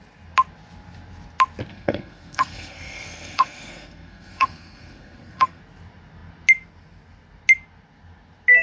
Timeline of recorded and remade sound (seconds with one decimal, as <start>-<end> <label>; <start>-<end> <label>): 0.0-1.7 recorded; 1.7-5.6 remade; 5.6-8.6 recorded